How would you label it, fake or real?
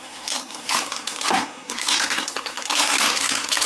fake